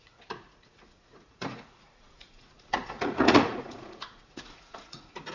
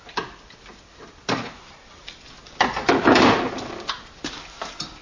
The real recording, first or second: second